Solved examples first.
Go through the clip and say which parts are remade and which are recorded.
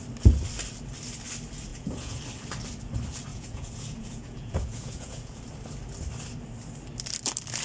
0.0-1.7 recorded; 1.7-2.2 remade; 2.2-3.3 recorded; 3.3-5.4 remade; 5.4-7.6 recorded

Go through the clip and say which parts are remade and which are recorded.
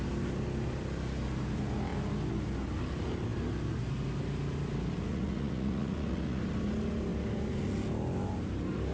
0.0-5.1 recorded; 5.1-6.4 remade; 6.4-8.9 recorded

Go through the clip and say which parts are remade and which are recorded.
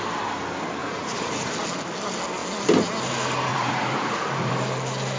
0.0-0.8 recorded; 0.8-1.5 remade; 1.5-3.5 recorded; 3.5-4.5 remade; 4.5-5.2 recorded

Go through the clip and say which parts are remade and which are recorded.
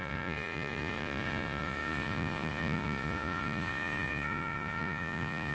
0.0-5.5 remade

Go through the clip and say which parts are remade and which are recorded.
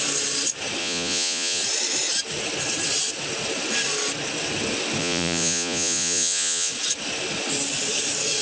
0.0-0.8 recorded; 0.8-1.6 remade; 1.6-5.0 recorded; 5.0-6.7 remade; 6.7-8.4 recorded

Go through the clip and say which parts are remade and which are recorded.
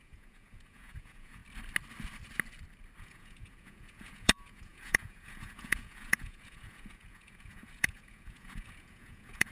0.0-1.4 remade; 1.4-3.0 recorded; 3.0-9.5 remade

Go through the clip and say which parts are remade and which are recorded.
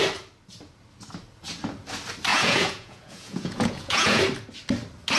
0.0-2.3 recorded; 2.3-4.2 remade; 4.2-5.2 recorded